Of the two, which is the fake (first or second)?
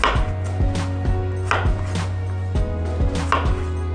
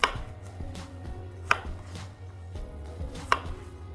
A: second